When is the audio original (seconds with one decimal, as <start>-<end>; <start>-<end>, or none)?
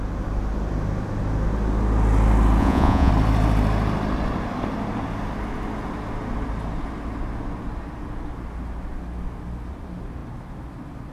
0.0-2.6; 3.1-11.1